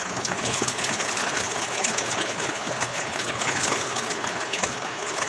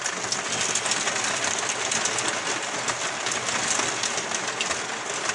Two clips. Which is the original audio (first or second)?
second